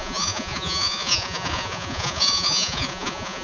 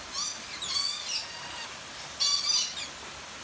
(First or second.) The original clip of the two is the second